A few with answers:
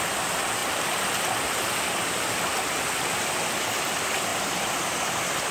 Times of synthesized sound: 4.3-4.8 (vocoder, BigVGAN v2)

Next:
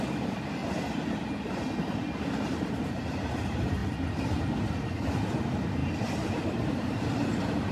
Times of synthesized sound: 0.0-0.6 (vocoder, BigVGAN v2); 3.0-3.8; 4.8-7.7

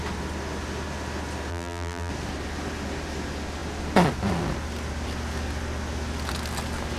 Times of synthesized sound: 1.5-2.1 (vocoder, BigVGAN v2)

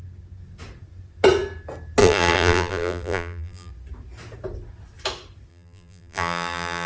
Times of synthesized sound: 2.0-3.7 (vocoder, BigVGAN v2); 5.5-6.9

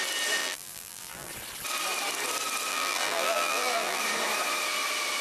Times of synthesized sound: 0.4-1.3 (vocoder, BigVGAN v2); 2.7-4.0